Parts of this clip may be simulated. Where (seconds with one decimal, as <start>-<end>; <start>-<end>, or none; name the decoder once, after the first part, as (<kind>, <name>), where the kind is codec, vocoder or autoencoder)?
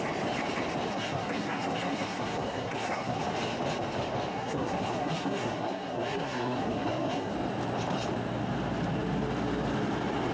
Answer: 0.9-3.2 (codec, SNAC); 4.3-7.3